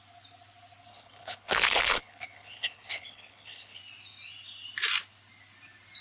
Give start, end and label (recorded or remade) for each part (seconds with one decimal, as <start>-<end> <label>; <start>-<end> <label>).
0.0-0.9 recorded; 0.9-3.8 remade; 3.8-6.0 recorded